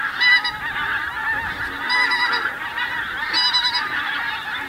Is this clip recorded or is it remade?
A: recorded